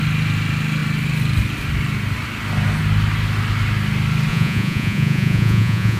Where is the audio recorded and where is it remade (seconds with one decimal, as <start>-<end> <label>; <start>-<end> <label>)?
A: 0.0-4.3 recorded; 4.3-6.0 remade